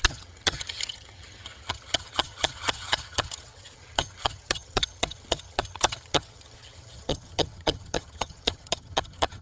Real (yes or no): no